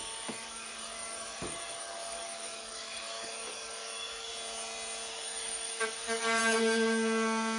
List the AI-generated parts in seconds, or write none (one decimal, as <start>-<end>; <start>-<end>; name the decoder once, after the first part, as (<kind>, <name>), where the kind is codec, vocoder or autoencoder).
0.0-4.3 (codec, DAC); 5.1-6.4